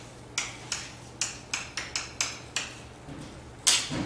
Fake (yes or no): no